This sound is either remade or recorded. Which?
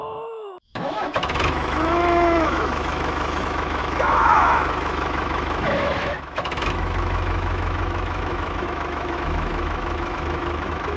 remade